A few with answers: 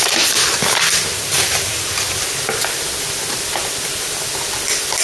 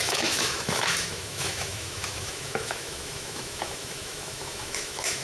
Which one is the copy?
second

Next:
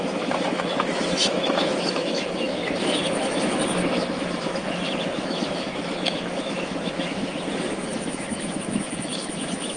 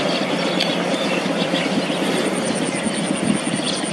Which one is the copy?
first